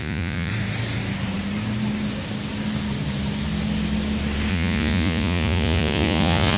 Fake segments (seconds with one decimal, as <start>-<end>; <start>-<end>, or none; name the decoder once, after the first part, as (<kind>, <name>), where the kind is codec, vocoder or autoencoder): 0.0-0.5 (vocoder, Vocos); 4.5-6.6